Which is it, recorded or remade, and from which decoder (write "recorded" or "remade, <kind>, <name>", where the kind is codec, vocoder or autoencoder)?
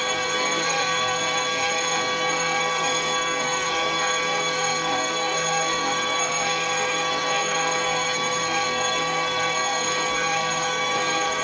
remade, codec, SNAC